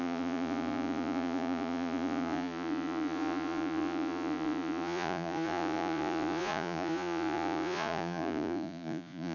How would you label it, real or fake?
fake